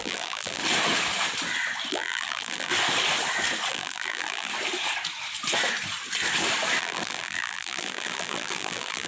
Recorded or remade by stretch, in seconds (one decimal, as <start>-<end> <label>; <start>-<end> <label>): 0.0-0.6 remade; 0.6-1.9 recorded; 1.9-2.7 remade; 2.7-3.7 recorded; 3.7-4.5 remade; 4.5-6.8 recorded; 6.8-9.1 remade

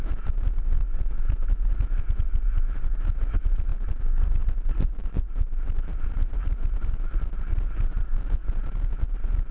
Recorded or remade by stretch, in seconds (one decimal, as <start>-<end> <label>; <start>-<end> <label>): 0.0-3.7 recorded; 3.7-7.1 remade; 7.1-9.5 recorded

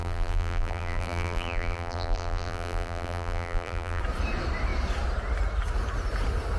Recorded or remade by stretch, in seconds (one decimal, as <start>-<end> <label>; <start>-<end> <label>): 0.0-4.0 remade; 4.0-6.6 recorded